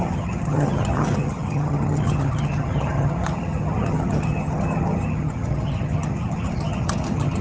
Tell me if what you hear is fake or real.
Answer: fake